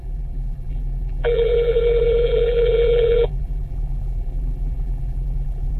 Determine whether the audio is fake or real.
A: fake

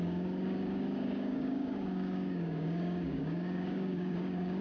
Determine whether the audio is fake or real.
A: fake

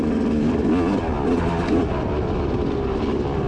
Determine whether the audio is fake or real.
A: real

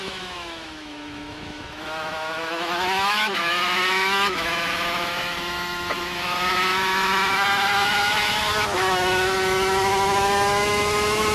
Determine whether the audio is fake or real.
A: fake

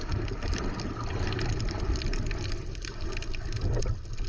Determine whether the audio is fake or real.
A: real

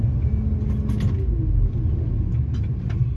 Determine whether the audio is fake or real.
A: real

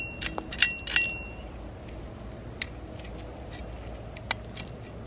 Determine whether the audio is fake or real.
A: real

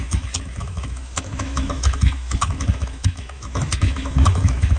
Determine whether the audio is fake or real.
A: fake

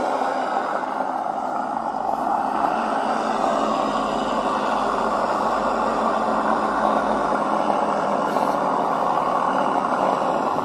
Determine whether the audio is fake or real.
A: real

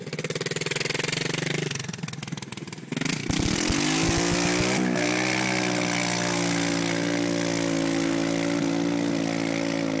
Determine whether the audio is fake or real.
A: real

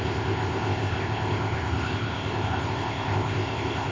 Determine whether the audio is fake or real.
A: fake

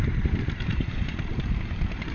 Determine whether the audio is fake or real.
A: fake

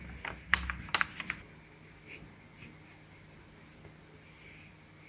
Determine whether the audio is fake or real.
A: real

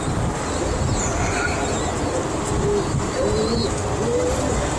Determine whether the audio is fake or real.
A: real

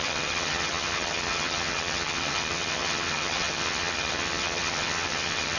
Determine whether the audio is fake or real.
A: fake